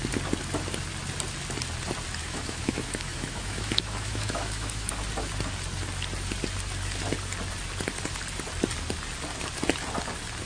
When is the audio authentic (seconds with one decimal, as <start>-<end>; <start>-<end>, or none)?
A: 0.0-2.2; 4.9-10.5